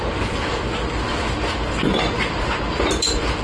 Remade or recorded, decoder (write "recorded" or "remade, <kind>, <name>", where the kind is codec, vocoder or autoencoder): recorded